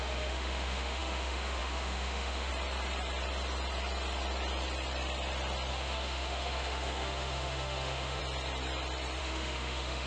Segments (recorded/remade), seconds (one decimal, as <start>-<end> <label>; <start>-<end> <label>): 0.0-2.5 remade; 2.5-5.7 recorded; 5.7-8.2 remade; 8.2-9.2 recorded; 9.2-10.1 remade

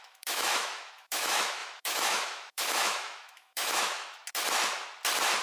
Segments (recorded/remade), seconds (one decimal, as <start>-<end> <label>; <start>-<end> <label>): 0.0-4.2 remade; 4.2-5.4 recorded

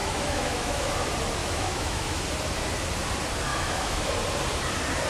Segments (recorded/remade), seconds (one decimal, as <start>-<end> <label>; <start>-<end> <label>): 0.0-0.9 remade; 0.9-1.4 recorded; 1.4-2.2 remade; 2.2-3.5 recorded; 3.5-4.1 remade; 4.1-5.1 recorded

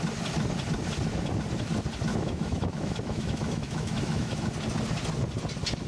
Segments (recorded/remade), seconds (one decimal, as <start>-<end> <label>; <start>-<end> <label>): 0.0-2.1 recorded; 2.1-4.5 remade; 4.5-5.9 recorded

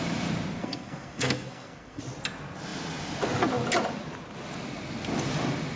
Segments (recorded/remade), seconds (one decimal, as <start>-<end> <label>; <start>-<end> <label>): 0.0-0.6 recorded; 0.6-2.0 remade; 2.0-5.8 recorded

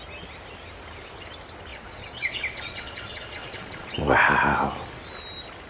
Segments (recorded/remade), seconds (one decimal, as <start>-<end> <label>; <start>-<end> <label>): 0.0-1.7 recorded; 1.7-4.0 remade; 4.0-5.7 recorded